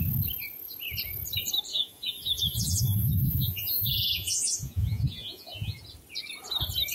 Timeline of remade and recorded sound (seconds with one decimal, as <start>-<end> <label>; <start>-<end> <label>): 0.0-1.7 recorded; 1.7-5.8 remade; 5.8-6.9 recorded